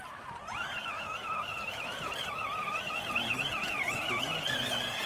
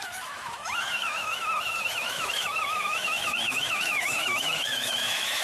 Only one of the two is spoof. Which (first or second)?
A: second